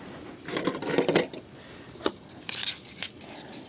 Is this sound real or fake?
real